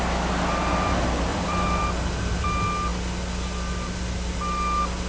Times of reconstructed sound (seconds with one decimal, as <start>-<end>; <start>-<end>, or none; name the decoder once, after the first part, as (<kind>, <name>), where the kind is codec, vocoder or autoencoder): 1.3-1.8 (vocoder, BigVGAN v2)